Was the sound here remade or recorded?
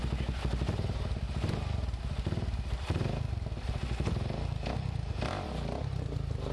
recorded